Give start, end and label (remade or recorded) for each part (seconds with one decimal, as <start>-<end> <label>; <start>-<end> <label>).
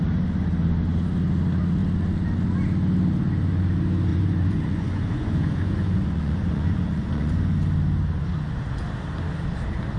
0.0-4.1 recorded; 4.1-7.3 remade; 7.3-10.0 recorded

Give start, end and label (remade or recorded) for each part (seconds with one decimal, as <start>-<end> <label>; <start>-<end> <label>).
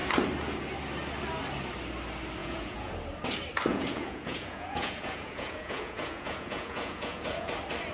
0.0-2.4 recorded; 2.4-2.9 remade; 2.9-3.7 recorded; 3.7-7.5 remade; 7.5-7.9 recorded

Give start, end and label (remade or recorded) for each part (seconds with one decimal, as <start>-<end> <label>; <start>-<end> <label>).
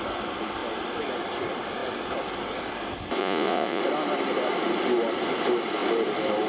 0.0-3.2 recorded; 3.2-3.8 remade; 3.8-6.5 recorded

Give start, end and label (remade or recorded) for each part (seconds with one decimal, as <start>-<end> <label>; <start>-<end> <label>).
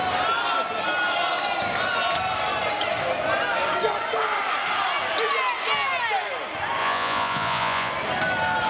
0.0-6.8 recorded; 6.8-7.9 remade; 7.9-8.7 recorded